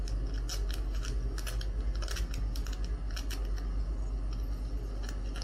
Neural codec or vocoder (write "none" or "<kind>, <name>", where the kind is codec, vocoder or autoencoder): none